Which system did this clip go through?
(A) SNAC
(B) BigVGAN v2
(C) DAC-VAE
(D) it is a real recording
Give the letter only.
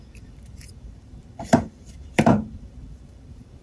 B